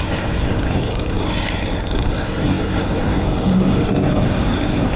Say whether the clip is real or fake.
fake